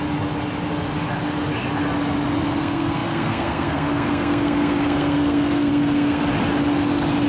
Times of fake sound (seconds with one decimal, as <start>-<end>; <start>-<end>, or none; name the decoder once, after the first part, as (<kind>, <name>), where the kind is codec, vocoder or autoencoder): 2.6-6.2 (codec, SNAC)